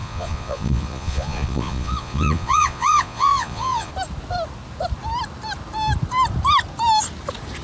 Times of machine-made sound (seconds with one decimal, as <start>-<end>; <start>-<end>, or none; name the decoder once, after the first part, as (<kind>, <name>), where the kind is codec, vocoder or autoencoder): 0.0-3.9 (vocoder, Vocos)